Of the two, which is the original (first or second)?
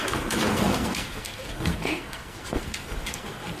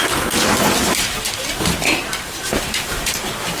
second